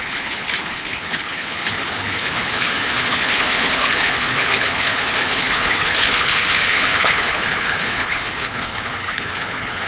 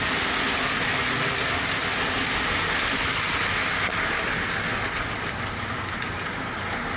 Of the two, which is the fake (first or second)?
first